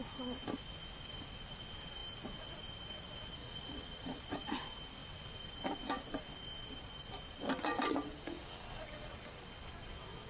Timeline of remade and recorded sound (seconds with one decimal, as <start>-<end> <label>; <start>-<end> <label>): 0.0-3.4 recorded; 3.4-4.4 remade; 4.4-8.0 recorded; 8.0-9.4 remade; 9.4-10.3 recorded